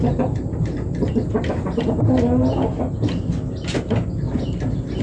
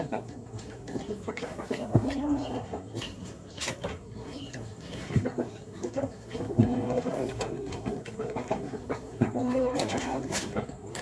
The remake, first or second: second